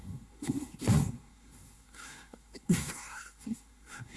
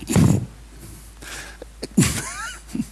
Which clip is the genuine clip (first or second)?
second